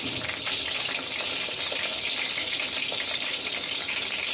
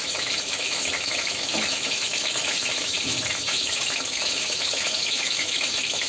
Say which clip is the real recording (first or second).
first